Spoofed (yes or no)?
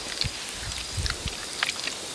no